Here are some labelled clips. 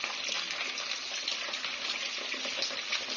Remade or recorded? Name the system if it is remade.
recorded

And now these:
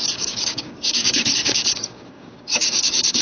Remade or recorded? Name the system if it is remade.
remade, codec, DAC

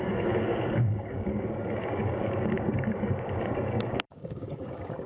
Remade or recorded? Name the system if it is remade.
remade, codec, DAC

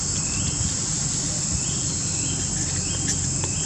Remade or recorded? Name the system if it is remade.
recorded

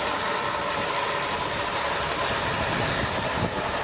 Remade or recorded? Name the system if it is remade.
recorded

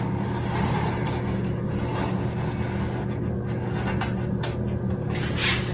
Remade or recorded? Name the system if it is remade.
recorded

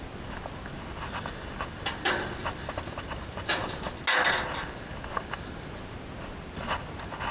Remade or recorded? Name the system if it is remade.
recorded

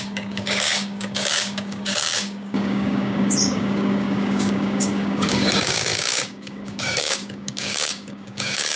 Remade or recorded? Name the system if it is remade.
remade, codec, DAC